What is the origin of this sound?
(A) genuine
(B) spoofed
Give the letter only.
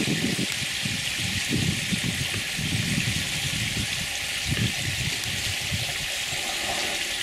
A